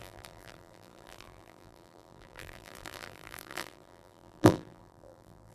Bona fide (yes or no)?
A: no